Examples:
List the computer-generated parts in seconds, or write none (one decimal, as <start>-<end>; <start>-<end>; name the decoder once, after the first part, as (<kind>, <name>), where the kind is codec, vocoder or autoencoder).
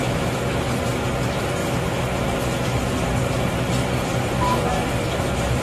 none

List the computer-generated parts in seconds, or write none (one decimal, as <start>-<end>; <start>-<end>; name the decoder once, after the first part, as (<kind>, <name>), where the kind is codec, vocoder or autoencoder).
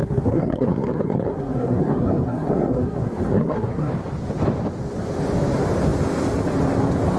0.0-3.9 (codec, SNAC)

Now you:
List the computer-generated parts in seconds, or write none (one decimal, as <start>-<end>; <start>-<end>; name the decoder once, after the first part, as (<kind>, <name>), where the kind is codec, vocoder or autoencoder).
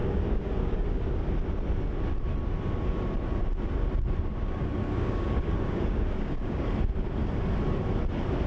0.0-1.3 (codec, DAC); 4.3-6.7